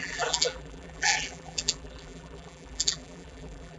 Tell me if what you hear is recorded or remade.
remade